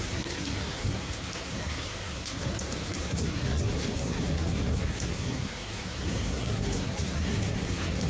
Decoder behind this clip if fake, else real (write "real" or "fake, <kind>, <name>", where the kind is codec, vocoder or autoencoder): fake, codec, SNAC